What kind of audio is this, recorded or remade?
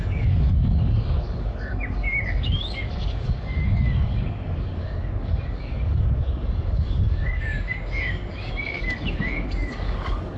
remade